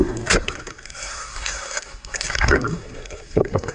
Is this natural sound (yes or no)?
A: no